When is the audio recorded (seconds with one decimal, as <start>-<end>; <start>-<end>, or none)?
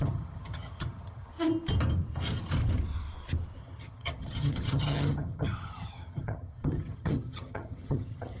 1.3-3.6